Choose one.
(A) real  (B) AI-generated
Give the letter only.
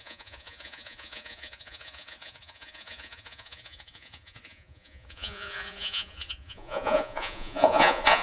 B